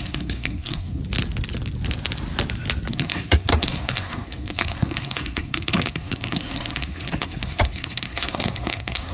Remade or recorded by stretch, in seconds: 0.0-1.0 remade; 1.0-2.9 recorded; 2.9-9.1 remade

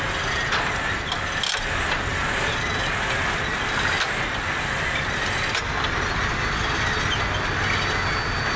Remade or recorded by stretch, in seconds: 0.0-8.6 recorded

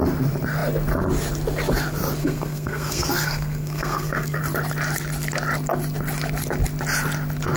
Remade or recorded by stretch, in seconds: 0.0-2.2 recorded; 2.2-4.4 remade; 4.4-7.6 recorded

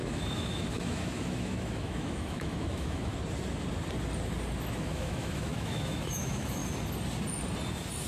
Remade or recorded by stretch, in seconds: 0.0-3.1 remade; 3.1-4.7 recorded; 4.7-6.6 remade; 6.6-8.1 recorded